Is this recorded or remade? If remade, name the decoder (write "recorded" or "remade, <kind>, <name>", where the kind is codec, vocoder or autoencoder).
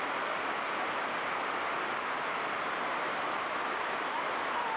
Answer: recorded